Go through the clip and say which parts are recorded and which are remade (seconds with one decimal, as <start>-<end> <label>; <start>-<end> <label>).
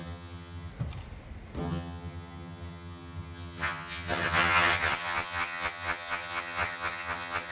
0.0-0.7 remade; 0.7-1.6 recorded; 1.6-7.5 remade